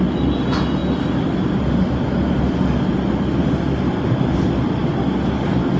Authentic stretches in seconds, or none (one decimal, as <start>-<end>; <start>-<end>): 0.0-5.8

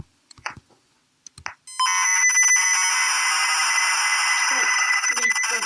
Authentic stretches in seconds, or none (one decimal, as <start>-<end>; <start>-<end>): 1.0-4.4

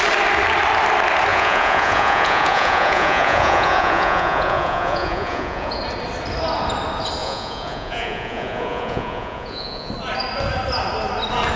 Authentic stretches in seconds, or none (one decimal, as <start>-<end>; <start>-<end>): 0.0-1.3; 5.8-7.2; 9.9-11.6

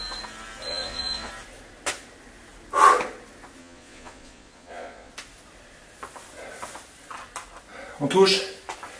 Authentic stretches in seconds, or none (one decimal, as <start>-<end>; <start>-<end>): 0.0-0.7; 1.3-3.6; 5.1-9.0

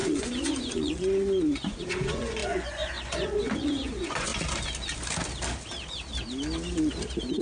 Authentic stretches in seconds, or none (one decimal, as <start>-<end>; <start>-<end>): 4.3-7.4

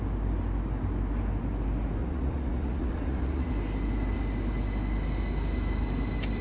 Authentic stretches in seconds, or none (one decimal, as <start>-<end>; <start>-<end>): 0.0-2.0; 3.5-6.4